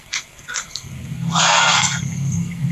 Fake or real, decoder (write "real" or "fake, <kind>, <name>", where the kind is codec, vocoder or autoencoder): fake, codec, SNAC